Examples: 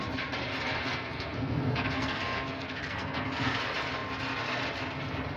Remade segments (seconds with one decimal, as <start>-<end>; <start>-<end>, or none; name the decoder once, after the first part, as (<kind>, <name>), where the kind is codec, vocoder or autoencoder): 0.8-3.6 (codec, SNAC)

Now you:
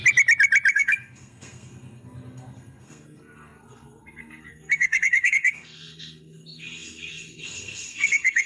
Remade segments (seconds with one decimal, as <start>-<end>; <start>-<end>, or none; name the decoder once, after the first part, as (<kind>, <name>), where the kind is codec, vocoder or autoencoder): 0.7-8.5 (codec, SNAC)

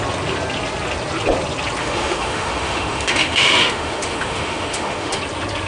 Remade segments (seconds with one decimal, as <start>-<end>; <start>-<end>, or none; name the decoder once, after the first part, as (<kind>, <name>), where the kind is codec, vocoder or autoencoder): 1.8-5.2 (autoencoder, DAC-VAE)